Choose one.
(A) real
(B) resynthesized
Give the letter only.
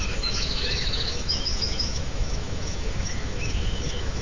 B